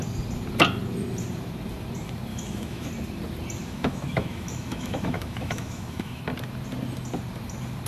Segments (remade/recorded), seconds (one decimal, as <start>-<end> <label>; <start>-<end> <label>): 0.0-2.3 recorded; 2.3-2.9 remade; 2.9-3.6 recorded; 3.6-6.2 remade; 6.2-7.9 recorded